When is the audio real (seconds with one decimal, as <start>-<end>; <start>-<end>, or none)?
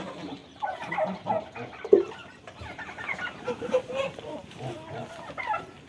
0.0-5.9